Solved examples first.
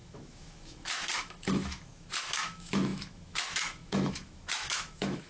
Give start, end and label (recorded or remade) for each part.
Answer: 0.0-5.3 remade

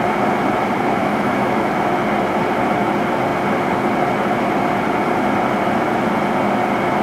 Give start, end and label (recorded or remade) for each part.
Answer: 0.0-1.0 recorded; 1.0-1.7 remade; 1.7-7.0 recorded

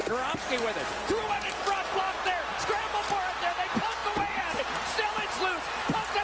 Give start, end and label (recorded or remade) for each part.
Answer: 0.0-6.2 recorded